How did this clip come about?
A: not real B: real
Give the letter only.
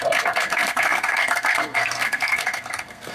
A